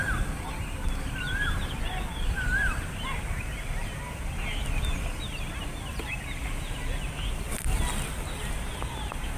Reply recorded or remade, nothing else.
recorded